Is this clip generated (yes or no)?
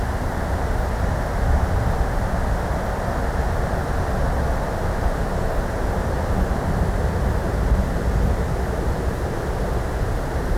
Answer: no